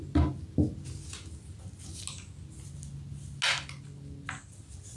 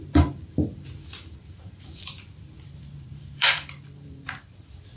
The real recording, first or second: first